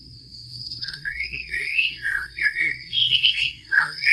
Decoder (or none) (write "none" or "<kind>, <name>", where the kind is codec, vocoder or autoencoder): codec, SNAC